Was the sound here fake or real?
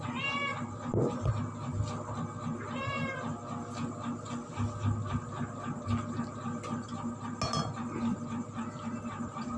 real